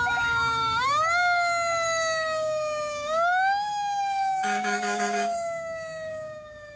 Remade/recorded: remade